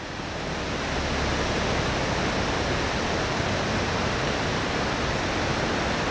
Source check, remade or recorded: recorded